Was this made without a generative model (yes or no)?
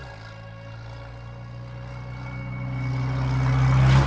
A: yes